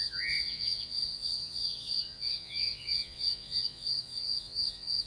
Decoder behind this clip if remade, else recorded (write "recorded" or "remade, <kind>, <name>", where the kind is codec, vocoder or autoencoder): remade, vocoder, Vocos